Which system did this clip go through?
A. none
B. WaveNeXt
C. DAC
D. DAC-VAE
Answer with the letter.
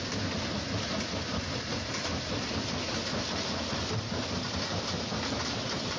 A